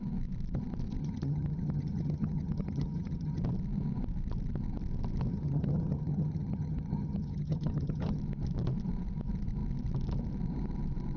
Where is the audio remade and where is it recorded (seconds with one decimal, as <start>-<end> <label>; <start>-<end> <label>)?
0.0-1.0 recorded; 1.0-3.4 remade; 3.4-5.3 recorded; 5.3-8.2 remade; 8.2-11.2 recorded